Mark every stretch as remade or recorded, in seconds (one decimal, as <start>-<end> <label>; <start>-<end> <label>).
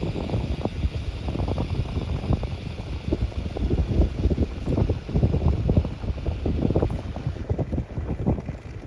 0.0-8.9 recorded